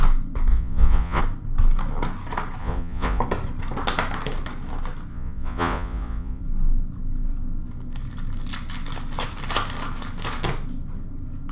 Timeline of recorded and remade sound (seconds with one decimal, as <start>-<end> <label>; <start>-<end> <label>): 0.0-0.5 recorded; 0.5-1.2 remade; 1.2-2.6 recorded; 2.6-3.2 remade; 3.2-5.1 recorded; 5.1-6.4 remade; 6.4-11.5 recorded